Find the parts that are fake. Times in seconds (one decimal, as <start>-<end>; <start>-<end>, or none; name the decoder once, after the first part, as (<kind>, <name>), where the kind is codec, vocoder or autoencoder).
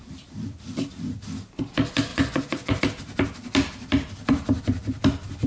2.1-2.8 (vocoder, Vocos)